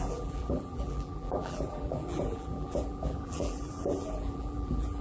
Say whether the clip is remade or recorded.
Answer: remade